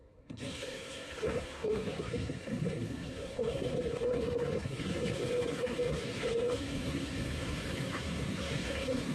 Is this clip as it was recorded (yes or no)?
no